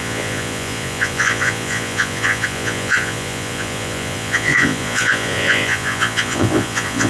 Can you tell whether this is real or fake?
fake